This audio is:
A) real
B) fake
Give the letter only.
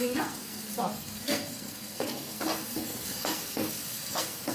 B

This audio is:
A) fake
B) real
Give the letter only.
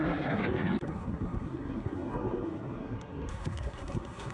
A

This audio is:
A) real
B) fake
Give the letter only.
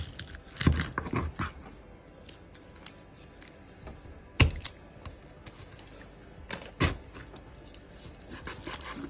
A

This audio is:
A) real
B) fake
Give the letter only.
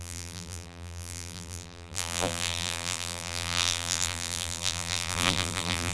B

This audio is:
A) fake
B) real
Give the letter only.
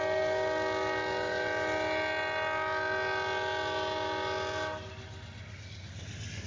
B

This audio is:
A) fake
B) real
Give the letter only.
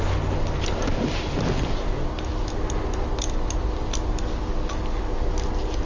B